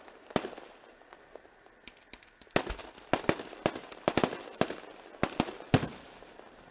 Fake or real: real